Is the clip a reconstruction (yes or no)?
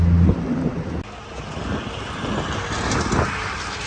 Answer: no